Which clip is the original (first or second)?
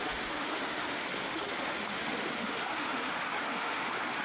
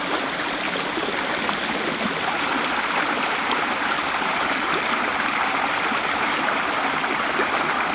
second